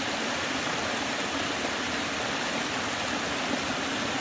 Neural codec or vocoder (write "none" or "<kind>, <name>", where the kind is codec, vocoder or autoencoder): none